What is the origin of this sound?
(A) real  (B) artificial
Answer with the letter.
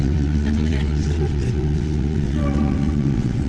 B